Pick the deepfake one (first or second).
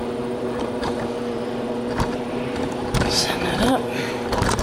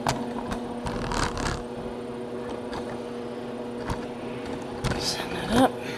first